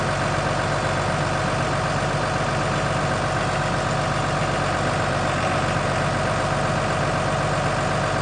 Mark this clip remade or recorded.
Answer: recorded